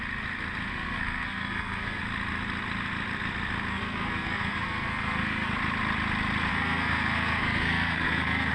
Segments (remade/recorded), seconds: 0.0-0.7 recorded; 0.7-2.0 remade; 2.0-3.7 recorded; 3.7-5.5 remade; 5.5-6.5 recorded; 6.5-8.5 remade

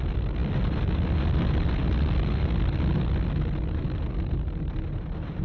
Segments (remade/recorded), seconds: 0.0-5.4 recorded

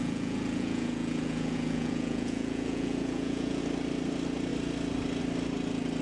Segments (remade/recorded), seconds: 0.0-3.6 remade; 3.6-6.0 recorded

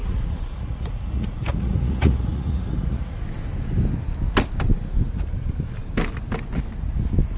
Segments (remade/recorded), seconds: 0.0-3.2 remade; 3.2-7.4 recorded